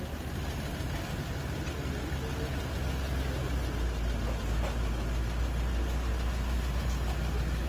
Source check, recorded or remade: recorded